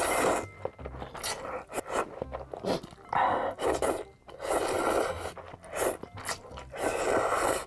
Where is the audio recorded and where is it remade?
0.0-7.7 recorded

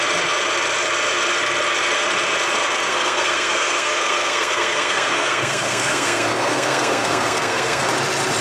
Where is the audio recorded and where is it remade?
0.0-2.9 recorded; 2.9-7.9 remade; 7.9-8.4 recorded

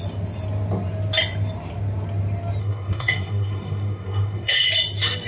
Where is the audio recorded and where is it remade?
0.0-2.6 recorded; 2.6-4.7 remade; 4.7-5.3 recorded

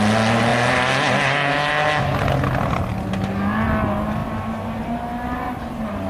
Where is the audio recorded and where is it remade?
0.0-6.1 recorded

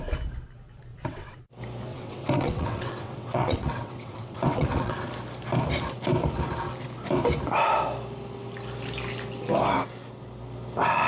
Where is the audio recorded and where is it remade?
0.0-0.9 recorded; 0.9-1.5 remade; 1.5-1.9 recorded; 1.9-4.9 remade; 4.9-11.1 recorded